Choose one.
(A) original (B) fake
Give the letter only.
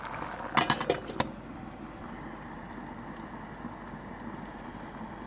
A